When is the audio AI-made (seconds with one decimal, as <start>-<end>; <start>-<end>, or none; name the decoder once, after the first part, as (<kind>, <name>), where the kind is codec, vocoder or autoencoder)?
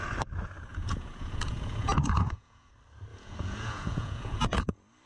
0.7-2.7 (vocoder, Vocos); 3.1-4.6